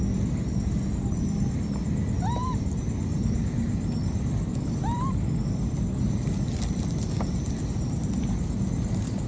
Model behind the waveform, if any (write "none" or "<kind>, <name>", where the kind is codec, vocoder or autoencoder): none